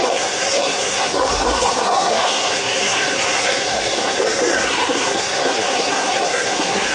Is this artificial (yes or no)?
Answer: yes